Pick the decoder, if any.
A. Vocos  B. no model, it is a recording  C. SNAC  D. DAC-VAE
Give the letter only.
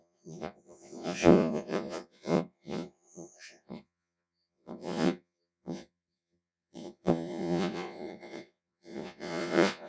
A